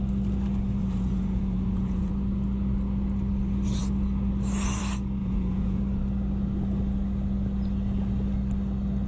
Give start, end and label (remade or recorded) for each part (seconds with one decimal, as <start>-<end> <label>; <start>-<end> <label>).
0.0-0.8 recorded; 0.8-2.1 remade; 2.1-5.2 recorded; 5.2-5.8 remade; 5.8-9.1 recorded